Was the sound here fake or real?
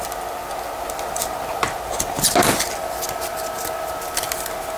real